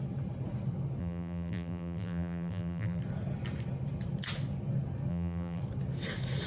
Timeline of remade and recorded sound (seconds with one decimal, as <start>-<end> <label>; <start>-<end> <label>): 0.0-1.0 recorded; 1.0-3.0 remade; 3.0-5.1 recorded; 5.1-5.6 remade; 5.6-6.5 recorded